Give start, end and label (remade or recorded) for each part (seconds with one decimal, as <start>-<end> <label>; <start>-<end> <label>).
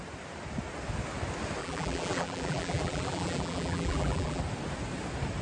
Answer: 0.0-1.6 recorded; 1.6-4.4 remade; 4.4-5.4 recorded